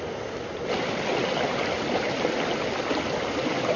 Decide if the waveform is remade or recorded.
recorded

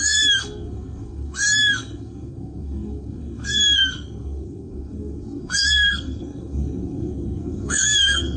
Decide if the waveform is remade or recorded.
remade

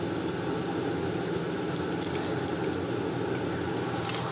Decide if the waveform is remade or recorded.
recorded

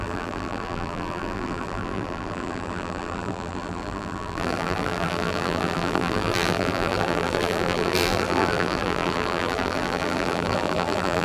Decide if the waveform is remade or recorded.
remade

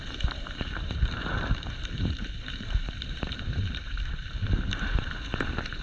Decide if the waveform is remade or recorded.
remade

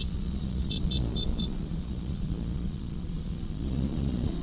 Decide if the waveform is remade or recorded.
remade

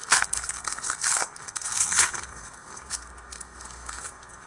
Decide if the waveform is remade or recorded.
remade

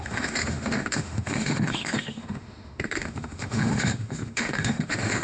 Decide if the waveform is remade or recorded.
remade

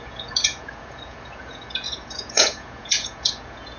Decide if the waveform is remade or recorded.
remade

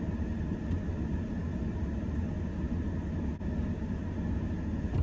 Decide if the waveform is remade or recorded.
recorded